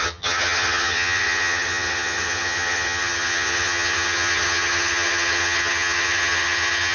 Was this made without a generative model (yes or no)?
no